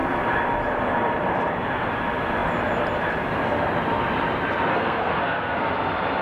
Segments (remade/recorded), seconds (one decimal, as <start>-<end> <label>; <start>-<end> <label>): 0.0-4.7 recorded; 4.7-5.7 remade; 5.7-6.2 recorded